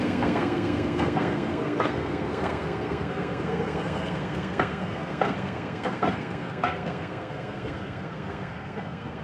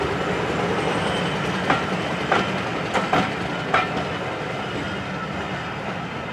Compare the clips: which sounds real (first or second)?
second